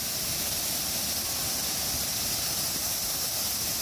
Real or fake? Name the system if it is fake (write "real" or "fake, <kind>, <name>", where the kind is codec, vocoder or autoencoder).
real